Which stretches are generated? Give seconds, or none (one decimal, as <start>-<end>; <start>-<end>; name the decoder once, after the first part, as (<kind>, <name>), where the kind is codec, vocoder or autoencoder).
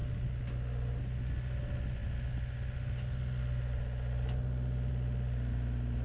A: none